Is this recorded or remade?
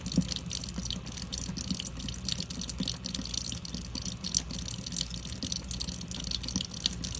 recorded